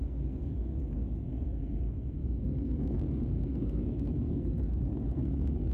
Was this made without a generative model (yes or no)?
no